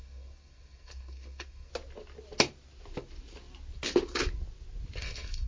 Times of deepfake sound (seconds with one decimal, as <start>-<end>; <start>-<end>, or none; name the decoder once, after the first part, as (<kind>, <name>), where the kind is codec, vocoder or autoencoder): 0.0-1.7 (codec, SNAC); 5.0-5.5